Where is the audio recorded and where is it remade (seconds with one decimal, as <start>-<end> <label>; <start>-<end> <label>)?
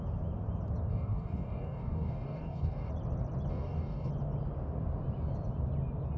0.0-0.9 recorded; 0.9-2.9 remade; 2.9-3.5 recorded; 3.5-4.1 remade; 4.1-6.2 recorded